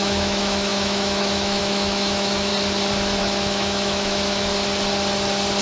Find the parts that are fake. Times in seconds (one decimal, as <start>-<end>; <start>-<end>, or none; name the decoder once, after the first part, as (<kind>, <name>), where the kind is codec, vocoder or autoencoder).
0.0-2.5 (autoencoder, DAC-VAE); 3.2-4.5